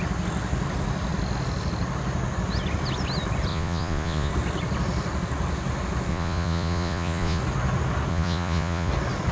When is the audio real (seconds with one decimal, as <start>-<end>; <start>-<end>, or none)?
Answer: 0.0-3.5; 4.3-6.1; 7.4-8.1; 8.9-9.3